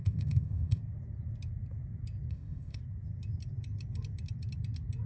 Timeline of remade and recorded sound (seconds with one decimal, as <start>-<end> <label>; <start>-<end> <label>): 0.0-0.8 remade; 0.8-2.3 recorded; 2.3-2.8 remade; 2.8-5.1 recorded